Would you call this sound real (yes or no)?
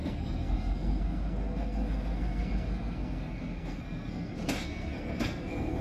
no